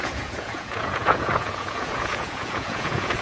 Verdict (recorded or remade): remade